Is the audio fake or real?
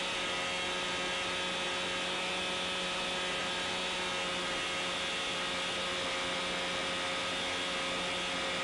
real